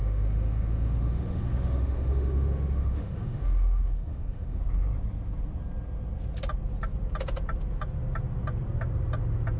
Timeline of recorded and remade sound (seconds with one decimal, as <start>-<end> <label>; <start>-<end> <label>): 0.0-4.6 remade; 4.6-9.6 recorded